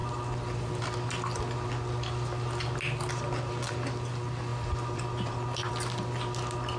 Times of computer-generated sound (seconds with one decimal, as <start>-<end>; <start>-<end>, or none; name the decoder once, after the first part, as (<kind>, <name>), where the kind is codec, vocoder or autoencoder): 4.5-5.7 (vocoder, BigVGAN v2)